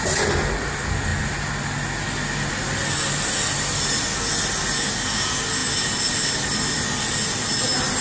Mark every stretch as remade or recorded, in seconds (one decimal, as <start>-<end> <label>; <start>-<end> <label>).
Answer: 0.0-5.6 recorded; 5.6-6.8 remade; 6.8-8.0 recorded